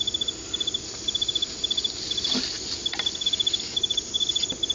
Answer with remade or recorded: recorded